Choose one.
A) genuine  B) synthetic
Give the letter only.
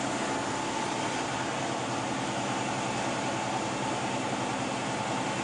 A